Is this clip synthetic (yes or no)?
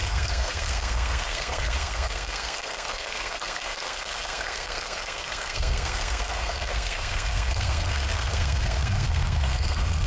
yes